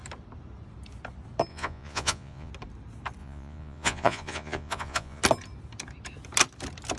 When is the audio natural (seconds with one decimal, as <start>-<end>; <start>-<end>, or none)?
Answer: 0.0-1.5; 2.5-3.2; 5.2-7.0